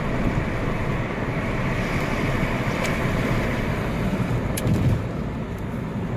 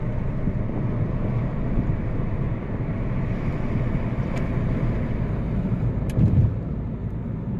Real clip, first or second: second